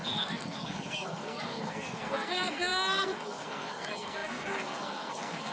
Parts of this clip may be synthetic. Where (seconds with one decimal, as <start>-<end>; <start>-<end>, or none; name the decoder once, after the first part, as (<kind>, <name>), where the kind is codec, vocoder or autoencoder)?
0.0-5.5 (codec, SNAC)